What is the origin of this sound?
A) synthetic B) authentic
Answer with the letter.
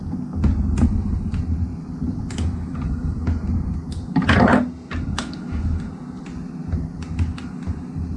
B